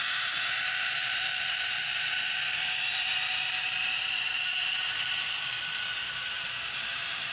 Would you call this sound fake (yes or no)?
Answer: yes